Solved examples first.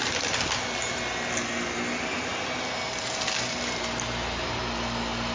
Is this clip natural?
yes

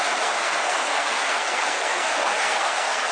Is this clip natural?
no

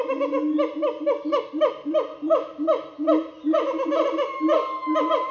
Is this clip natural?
yes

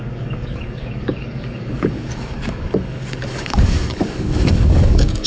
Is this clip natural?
no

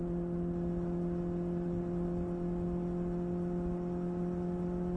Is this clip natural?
yes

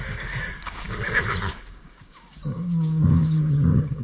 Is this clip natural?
no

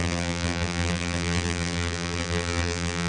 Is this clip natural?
no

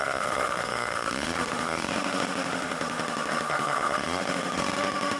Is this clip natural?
no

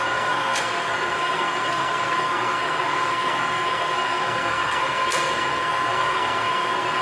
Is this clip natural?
no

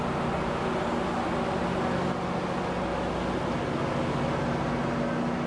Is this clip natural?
yes